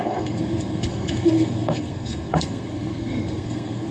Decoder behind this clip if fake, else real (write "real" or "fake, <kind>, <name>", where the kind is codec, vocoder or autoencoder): fake, codec, SNAC